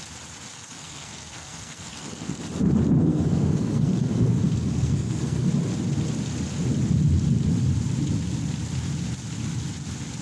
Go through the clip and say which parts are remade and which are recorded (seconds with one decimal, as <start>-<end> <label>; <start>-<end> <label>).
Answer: 0.0-0.5 recorded; 0.5-2.4 remade; 2.4-3.0 recorded; 3.0-5.5 remade; 5.5-10.2 recorded